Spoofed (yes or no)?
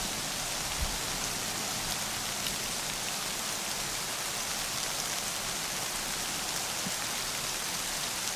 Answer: no